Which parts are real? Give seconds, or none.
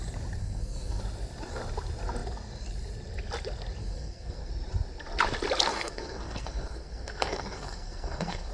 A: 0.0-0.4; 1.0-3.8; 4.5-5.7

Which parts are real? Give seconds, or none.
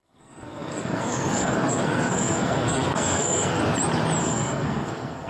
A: 3.6-4.2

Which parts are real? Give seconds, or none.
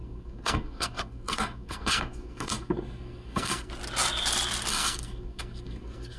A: 3.7-4.7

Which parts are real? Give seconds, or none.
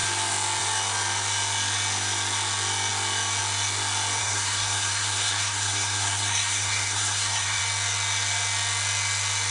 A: 0.0-4.2; 7.6-9.5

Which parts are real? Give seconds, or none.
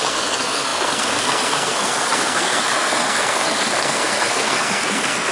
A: none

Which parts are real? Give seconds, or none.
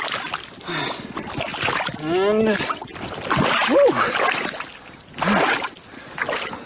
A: 0.0-6.7